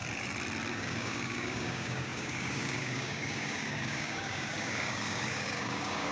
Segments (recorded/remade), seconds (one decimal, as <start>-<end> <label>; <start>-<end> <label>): 0.0-0.7 recorded; 0.7-6.1 remade